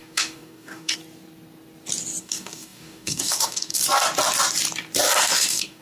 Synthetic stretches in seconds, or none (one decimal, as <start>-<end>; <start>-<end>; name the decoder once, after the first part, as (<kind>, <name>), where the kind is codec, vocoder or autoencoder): 0.0-1.0 (codec, DAC); 2.2-3.8; 5.2-5.8